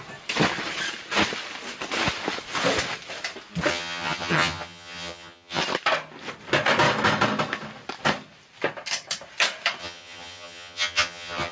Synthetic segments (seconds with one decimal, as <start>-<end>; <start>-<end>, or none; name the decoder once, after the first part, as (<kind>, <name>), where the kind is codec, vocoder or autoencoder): 3.7-5.6 (vocoder, HiFi-GAN); 9.8-11.5